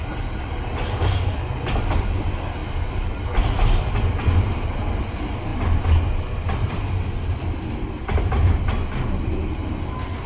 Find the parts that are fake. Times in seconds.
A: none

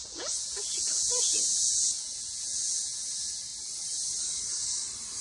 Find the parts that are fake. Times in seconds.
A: 0.0-3.1 (vocoder, Vocos)